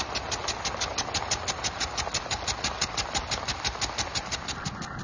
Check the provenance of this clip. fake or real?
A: real